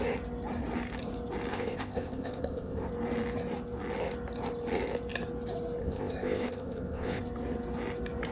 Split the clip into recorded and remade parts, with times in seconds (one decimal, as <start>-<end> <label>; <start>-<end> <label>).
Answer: 0.0-1.5 recorded; 1.5-2.9 remade; 2.9-5.8 recorded; 5.8-7.2 remade; 7.2-8.3 recorded